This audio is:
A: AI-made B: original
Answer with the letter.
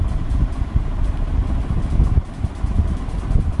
B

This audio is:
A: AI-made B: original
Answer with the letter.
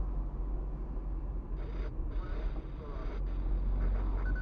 B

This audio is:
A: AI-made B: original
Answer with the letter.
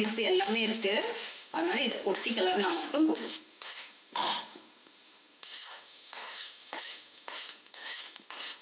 A